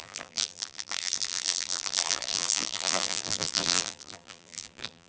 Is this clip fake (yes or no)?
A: yes